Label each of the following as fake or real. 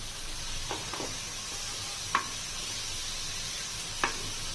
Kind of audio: real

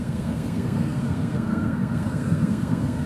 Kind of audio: fake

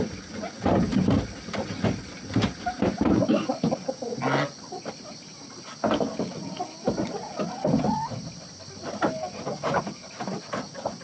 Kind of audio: real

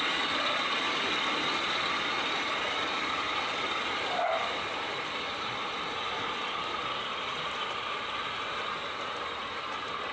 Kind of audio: real